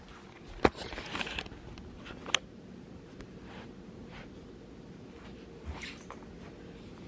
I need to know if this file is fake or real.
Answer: real